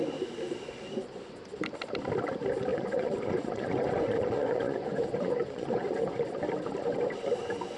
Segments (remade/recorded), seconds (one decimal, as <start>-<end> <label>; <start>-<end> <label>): 0.0-2.7 recorded; 2.7-6.2 remade; 6.2-7.8 recorded